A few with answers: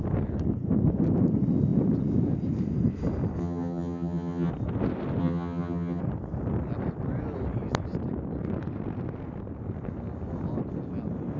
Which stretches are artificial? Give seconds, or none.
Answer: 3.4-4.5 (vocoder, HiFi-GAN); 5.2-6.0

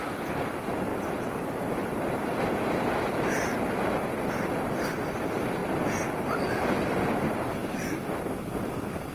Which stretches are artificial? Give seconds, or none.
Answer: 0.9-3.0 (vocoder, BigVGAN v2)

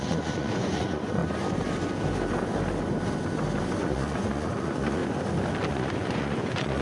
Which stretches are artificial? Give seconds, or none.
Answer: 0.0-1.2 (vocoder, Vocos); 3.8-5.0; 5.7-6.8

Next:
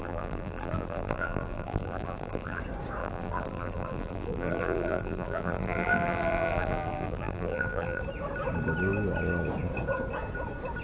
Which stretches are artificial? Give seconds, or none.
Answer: 0.0-2.6 (vocoder, BigVGAN v2); 3.0-8.0

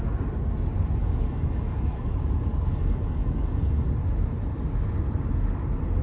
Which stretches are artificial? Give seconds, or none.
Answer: 1.0-2.1 (codec, DAC); 2.7-3.9